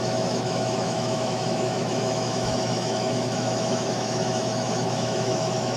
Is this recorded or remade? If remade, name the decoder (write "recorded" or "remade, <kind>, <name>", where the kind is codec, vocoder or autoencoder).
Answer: remade, autoencoder, DAC-VAE